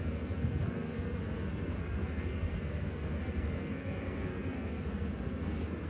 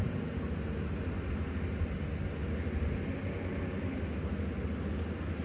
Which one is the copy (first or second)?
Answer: first